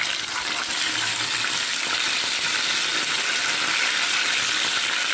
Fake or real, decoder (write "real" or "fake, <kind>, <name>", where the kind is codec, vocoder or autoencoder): real